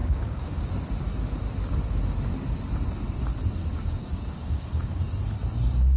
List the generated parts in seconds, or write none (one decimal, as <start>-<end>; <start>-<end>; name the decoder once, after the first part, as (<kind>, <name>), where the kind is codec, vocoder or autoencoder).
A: 0.0-0.7 (codec, DAC); 3.6-5.0